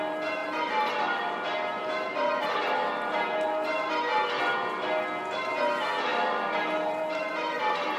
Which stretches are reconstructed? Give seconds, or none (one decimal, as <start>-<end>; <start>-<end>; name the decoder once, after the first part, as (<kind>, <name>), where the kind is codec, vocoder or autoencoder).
0.4-3.9 (vocoder, BigVGAN v2); 6.1-8.0